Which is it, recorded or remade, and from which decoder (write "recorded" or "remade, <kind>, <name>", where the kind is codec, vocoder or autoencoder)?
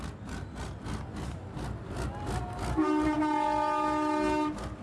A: recorded